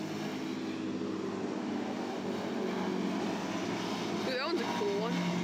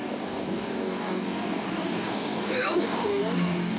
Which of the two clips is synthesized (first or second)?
second